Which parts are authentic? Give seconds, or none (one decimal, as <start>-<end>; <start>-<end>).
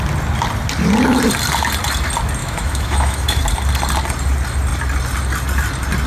0.0-2.4; 3.4-6.1